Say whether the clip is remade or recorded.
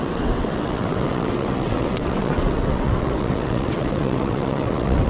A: remade